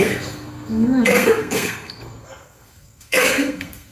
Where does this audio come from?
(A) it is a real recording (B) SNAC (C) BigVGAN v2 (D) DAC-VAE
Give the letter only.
B